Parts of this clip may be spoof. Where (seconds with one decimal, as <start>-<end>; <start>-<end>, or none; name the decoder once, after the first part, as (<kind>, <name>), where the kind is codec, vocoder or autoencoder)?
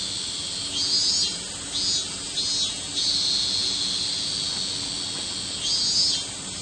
none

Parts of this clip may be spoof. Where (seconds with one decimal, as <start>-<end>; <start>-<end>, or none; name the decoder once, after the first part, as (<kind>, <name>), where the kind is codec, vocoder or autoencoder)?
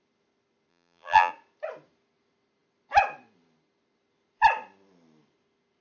0.7-1.3 (vocoder, BigVGAN v2)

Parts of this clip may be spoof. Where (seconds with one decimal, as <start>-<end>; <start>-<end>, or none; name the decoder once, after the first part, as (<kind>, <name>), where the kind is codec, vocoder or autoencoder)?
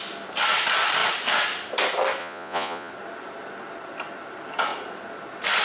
2.2-2.9 (vocoder, Vocos)